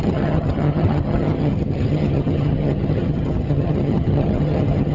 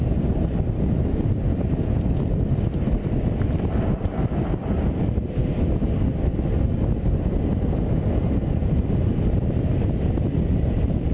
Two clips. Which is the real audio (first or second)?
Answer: second